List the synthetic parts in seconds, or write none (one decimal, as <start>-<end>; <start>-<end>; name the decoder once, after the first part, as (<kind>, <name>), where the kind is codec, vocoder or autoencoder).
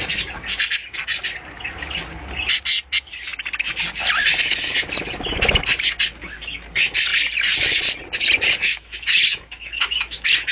8.6-10.5 (autoencoder, DAC-VAE)